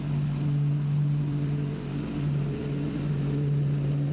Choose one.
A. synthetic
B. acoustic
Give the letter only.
B